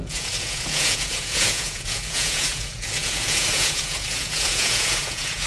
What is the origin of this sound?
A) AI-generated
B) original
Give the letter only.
A